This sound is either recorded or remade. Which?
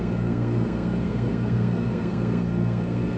remade